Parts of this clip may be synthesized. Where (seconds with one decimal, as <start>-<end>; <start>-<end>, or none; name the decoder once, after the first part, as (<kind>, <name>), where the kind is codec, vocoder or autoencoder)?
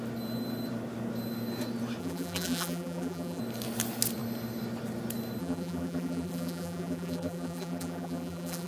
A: 2.0-3.4 (vocoder, BigVGAN v2); 5.4-8.7